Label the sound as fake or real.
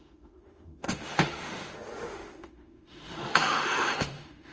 fake